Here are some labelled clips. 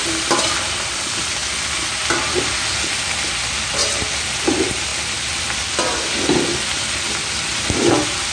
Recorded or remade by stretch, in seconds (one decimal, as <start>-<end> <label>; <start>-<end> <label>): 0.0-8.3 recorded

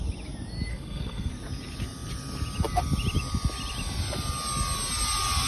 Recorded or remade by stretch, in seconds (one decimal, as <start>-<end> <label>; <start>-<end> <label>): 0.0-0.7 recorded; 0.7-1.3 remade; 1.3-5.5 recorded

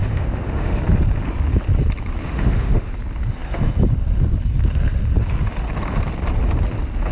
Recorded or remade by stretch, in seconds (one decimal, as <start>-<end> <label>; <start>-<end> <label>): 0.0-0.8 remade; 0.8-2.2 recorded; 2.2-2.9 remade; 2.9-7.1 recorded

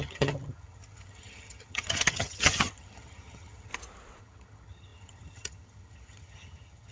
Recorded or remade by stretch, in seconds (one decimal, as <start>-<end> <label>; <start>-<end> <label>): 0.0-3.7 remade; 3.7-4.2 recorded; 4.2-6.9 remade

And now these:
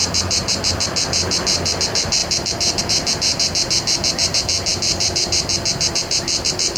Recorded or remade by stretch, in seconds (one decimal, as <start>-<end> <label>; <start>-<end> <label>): 0.0-6.8 remade